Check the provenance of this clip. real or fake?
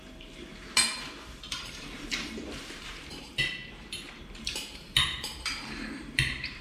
fake